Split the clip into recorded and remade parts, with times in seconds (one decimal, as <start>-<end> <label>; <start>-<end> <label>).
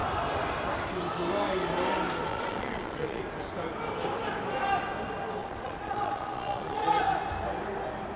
0.0-2.3 recorded; 2.3-3.2 remade; 3.2-5.4 recorded; 5.4-7.0 remade; 7.0-8.2 recorded